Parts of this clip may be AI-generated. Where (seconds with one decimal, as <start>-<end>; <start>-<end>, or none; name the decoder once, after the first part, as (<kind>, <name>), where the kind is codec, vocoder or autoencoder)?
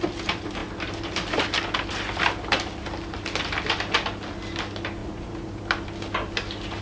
5.0-5.6 (vocoder, Vocos)